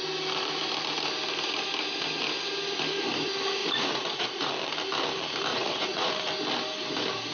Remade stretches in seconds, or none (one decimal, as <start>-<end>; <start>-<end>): 3.6-4.5; 5.5-6.1